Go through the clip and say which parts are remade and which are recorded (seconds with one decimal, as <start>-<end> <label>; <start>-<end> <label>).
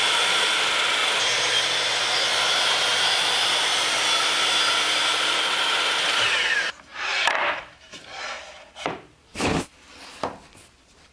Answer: 0.0-11.1 recorded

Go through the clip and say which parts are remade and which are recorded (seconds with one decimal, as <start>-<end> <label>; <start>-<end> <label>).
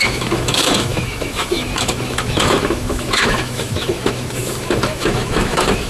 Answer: 0.0-5.9 remade